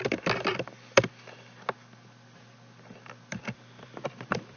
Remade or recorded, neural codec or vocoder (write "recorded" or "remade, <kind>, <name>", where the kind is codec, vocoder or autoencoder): recorded